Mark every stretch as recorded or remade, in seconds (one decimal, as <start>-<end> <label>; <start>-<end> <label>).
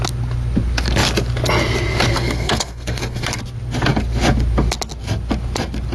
0.0-2.1 recorded; 2.1-3.4 remade; 3.4-5.9 recorded